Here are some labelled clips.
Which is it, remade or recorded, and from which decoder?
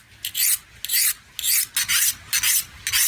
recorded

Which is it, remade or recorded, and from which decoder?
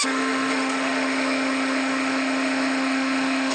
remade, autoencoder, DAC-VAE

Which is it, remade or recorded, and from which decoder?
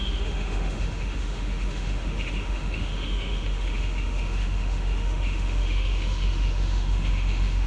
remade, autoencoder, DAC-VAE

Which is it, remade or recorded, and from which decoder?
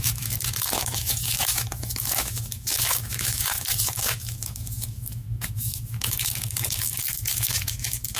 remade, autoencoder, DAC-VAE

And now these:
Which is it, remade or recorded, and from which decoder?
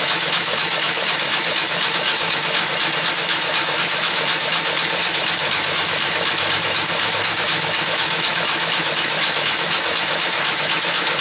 remade, autoencoder, DAC-VAE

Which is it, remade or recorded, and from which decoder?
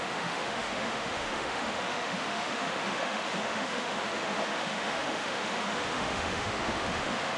remade, autoencoder, DAC-VAE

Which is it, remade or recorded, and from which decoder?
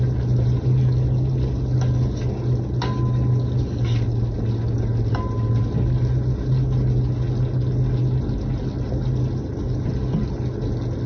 recorded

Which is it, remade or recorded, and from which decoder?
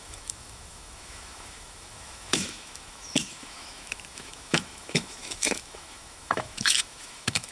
remade, autoencoder, DAC-VAE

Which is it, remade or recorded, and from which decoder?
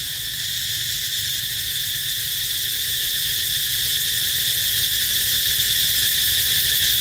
recorded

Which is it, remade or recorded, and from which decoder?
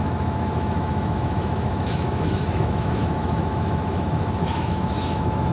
remade, autoencoder, DAC-VAE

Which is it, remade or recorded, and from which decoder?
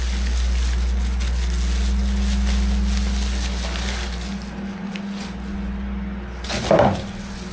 recorded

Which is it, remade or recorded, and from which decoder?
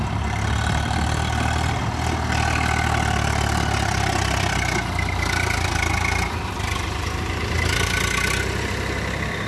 recorded